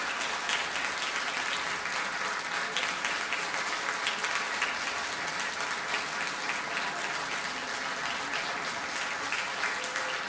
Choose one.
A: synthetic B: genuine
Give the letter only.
B